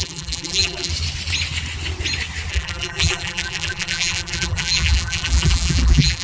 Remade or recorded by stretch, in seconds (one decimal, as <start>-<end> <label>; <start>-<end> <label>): 0.0-0.9 remade; 0.9-2.5 recorded; 2.5-6.2 remade

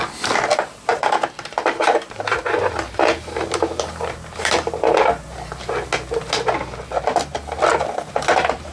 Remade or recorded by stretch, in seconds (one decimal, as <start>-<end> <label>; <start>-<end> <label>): 0.0-0.9 recorded; 0.9-5.7 remade; 5.7-7.7 recorded; 7.7-8.7 remade

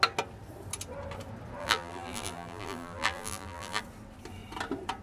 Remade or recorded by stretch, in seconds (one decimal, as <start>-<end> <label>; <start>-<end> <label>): 0.0-1.6 recorded; 1.6-3.8 remade; 3.8-5.0 recorded

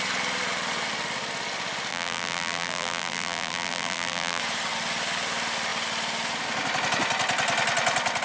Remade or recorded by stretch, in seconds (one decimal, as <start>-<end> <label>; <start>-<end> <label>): 0.0-1.9 recorded; 1.9-4.4 remade; 4.4-8.2 recorded

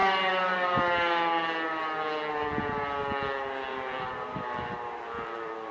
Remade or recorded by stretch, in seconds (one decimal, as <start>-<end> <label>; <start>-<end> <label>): 0.0-0.8 remade; 0.8-3.7 recorded; 3.7-5.7 remade

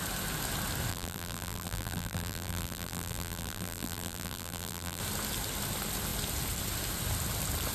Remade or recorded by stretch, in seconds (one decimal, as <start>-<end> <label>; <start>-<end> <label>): 0.0-0.9 recorded; 0.9-5.0 remade; 5.0-7.7 recorded